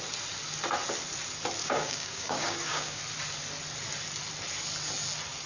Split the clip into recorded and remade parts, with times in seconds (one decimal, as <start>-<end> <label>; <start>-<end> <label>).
0.0-1.6 recorded; 1.6-3.0 remade; 3.0-5.5 recorded